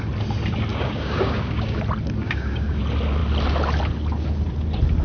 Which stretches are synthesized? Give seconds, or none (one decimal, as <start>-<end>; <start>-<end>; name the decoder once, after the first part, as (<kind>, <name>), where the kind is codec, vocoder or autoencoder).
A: 0.7-1.8 (codec, DAC); 2.2-2.8